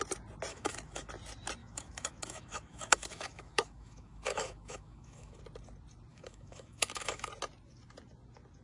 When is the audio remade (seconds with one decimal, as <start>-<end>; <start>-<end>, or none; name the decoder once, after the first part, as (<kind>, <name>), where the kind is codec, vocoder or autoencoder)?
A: 0.5-1.1 (autoencoder, DAC-VAE); 1.6-5.4; 6.1-7.3